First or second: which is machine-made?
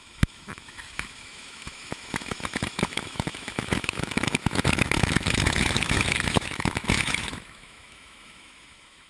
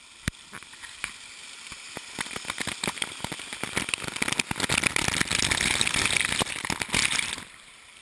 first